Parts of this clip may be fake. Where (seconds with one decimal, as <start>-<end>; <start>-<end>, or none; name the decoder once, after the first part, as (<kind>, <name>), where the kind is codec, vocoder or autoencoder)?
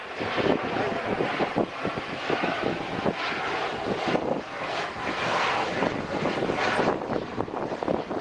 4.4-5.6 (codec, SNAC)